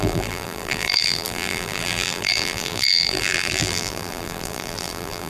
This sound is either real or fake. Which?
fake